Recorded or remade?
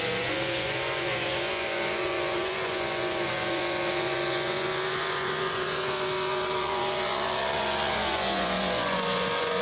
remade